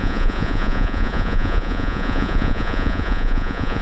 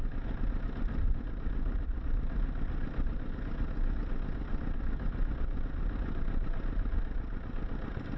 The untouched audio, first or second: second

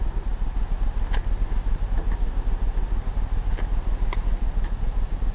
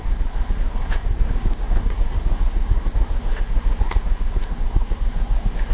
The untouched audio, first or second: first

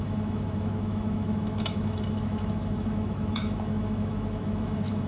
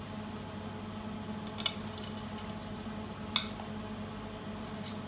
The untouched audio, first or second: second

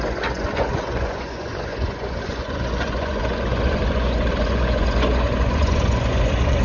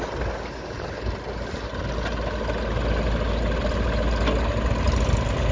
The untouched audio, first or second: second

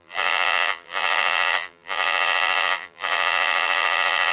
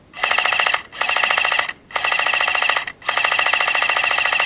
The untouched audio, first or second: second